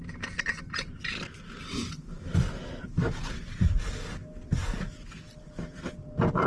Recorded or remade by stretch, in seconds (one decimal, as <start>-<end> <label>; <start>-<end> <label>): 0.0-6.5 recorded

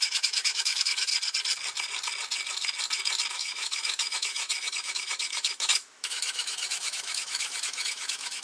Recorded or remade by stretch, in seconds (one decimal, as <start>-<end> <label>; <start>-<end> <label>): 0.0-1.1 remade; 1.1-3.3 recorded; 3.3-8.4 remade

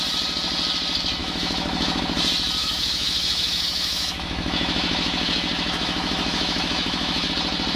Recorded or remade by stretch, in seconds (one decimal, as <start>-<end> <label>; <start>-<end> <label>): 0.0-1.2 recorded; 1.2-2.0 remade; 2.0-2.6 recorded; 2.6-7.3 remade; 7.3-7.8 recorded

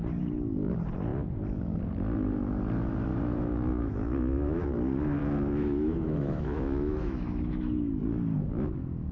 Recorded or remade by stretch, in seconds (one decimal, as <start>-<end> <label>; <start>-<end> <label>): 0.0-3.1 recorded; 3.1-4.6 remade; 4.6-5.2 recorded; 5.2-8.0 remade; 8.0-9.1 recorded

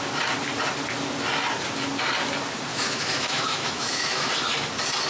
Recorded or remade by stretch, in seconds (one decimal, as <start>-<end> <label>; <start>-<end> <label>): 0.0-2.7 recorded; 2.7-4.3 remade; 4.3-5.1 recorded

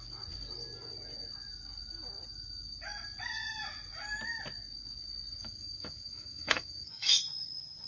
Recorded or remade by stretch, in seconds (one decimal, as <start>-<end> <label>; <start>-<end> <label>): 0.0-5.4 recorded; 5.4-7.2 remade; 7.2-7.9 recorded

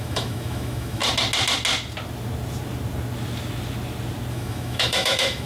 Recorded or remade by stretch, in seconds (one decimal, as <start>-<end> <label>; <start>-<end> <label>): 0.0-1.0 remade; 1.0-4.3 recorded; 4.3-5.5 remade